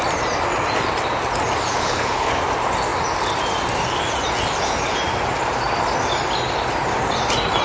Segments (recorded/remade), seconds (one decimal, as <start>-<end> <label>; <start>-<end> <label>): 0.0-1.7 recorded; 1.7-2.3 remade; 2.3-7.6 recorded